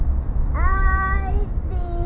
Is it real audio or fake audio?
real